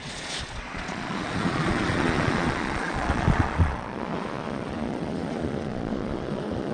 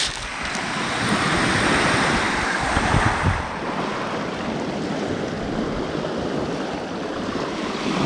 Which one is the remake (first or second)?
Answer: first